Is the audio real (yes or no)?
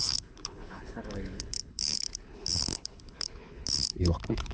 no